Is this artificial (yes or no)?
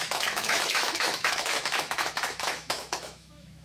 yes